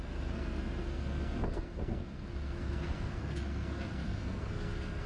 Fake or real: fake